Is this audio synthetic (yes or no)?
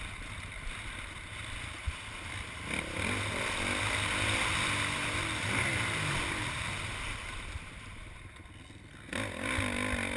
no